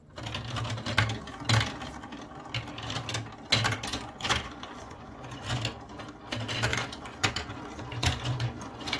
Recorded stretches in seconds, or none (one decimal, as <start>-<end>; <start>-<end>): 0.0-3.9; 5.6-6.7